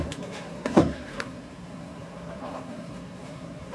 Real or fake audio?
fake